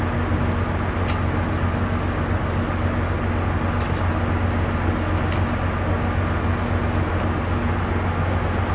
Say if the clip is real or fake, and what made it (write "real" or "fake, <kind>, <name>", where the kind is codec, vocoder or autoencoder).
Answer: real